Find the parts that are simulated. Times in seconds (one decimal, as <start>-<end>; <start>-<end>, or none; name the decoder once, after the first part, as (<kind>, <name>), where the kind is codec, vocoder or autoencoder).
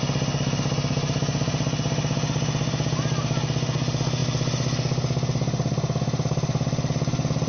none